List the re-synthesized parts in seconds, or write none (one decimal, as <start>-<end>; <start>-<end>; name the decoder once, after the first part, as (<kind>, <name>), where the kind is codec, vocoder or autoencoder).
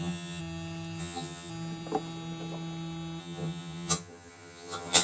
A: 0.0-0.4 (vocoder, HiFi-GAN); 1.0-1.5; 3.2-5.0